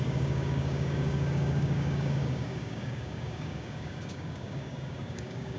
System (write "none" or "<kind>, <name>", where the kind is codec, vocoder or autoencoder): codec, DAC